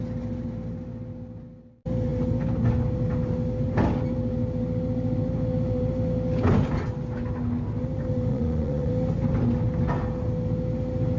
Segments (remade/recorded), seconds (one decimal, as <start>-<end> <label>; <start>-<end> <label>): 0.0-8.3 recorded; 8.3-8.9 remade; 8.9-11.2 recorded